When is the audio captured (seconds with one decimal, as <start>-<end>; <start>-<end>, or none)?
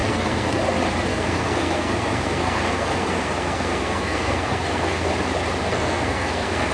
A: 0.6-1.1; 5.1-5.6